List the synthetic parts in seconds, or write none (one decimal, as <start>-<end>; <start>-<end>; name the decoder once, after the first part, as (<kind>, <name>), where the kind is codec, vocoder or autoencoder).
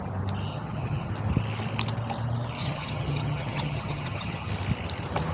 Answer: 0.5-1.1 (vocoder, HiFi-GAN); 2.6-4.5